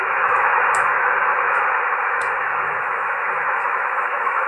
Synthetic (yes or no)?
yes